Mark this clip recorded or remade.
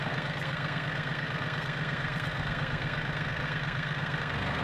remade